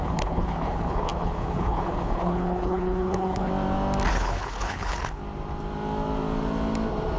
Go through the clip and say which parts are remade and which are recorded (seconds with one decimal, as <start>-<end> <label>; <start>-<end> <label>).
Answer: 0.0-3.5 remade; 3.5-4.1 recorded; 4.1-5.2 remade; 5.2-7.2 recorded